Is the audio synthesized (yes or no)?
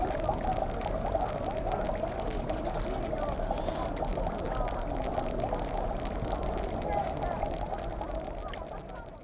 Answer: no